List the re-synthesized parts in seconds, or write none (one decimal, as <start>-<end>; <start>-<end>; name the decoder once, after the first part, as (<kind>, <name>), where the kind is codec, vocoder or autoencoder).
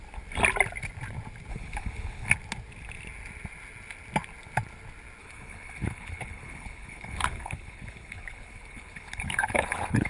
1.5-2.3 (codec, HILCodec); 5.2-10.1